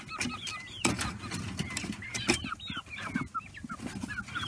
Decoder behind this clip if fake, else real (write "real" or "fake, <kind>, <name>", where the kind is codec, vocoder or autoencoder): real